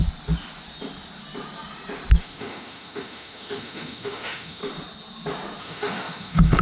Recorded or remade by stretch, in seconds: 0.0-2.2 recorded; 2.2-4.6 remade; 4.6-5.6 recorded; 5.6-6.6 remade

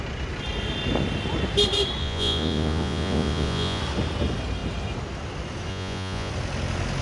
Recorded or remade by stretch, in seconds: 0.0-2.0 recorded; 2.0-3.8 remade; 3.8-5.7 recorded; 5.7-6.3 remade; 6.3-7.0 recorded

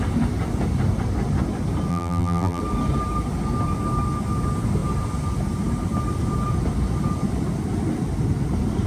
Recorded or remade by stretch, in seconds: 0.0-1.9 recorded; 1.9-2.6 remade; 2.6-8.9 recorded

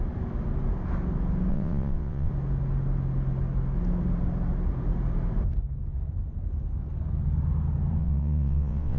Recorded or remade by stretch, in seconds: 0.0-1.5 recorded; 1.5-2.3 remade; 2.3-8.0 recorded; 8.0-9.0 remade

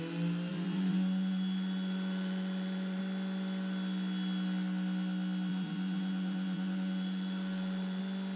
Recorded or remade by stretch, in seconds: 0.0-0.5 recorded; 0.5-3.0 remade; 3.0-5.5 recorded; 5.5-8.0 remade; 8.0-8.4 recorded

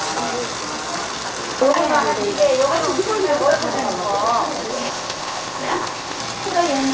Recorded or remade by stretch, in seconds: 0.0-4.7 recorded; 4.7-6.2 remade; 6.2-6.9 recorded

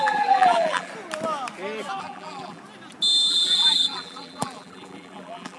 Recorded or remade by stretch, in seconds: 0.0-0.9 remade; 0.9-2.0 recorded; 2.0-2.6 remade; 2.6-3.3 recorded; 3.3-5.6 remade